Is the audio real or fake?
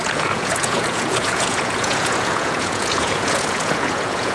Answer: fake